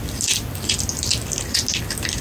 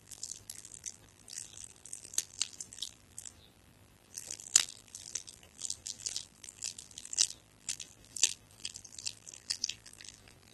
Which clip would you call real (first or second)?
first